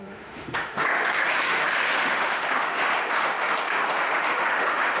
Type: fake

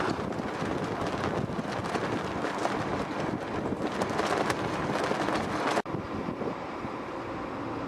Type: real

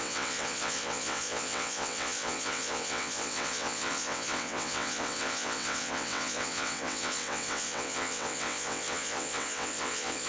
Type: fake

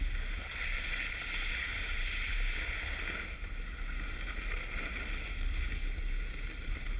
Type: real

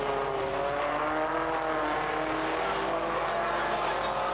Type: real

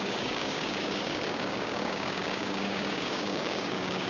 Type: fake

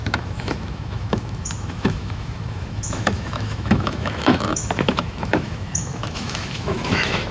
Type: fake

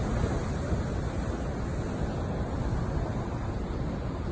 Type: real